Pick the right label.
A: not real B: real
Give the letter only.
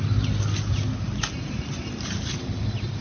B